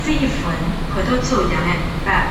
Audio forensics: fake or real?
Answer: real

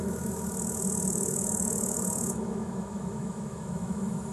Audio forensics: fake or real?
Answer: fake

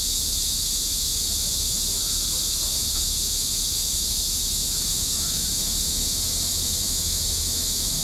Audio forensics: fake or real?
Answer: fake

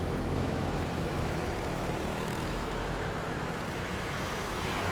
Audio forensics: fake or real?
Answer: fake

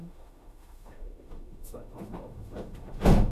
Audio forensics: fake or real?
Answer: fake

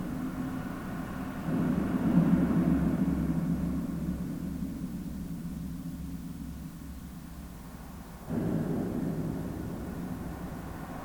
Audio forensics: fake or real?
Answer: real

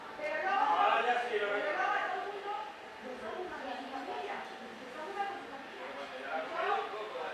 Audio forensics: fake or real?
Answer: real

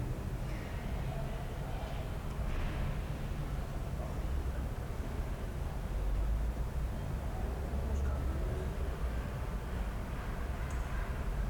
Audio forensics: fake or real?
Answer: real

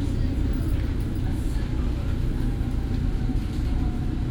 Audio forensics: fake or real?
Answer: real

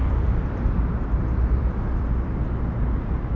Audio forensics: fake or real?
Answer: real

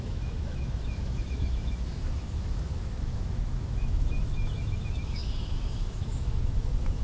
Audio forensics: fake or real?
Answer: fake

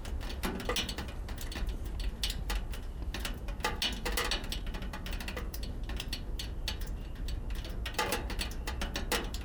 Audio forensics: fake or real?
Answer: real